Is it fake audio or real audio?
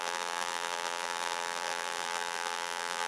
fake